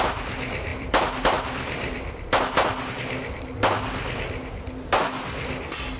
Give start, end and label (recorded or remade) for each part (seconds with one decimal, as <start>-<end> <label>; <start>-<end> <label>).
0.0-0.7 recorded; 0.7-2.9 remade; 2.9-6.0 recorded